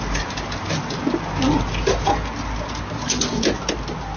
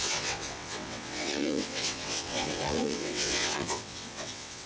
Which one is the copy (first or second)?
second